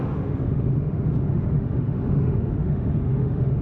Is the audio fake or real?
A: fake